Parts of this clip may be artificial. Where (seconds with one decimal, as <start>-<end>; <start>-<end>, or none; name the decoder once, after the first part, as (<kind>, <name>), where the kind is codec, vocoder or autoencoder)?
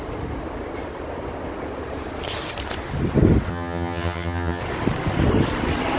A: 3.5-4.6 (vocoder, HiFi-GAN)